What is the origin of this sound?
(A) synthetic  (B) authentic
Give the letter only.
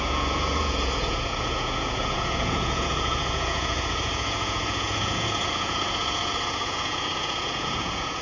A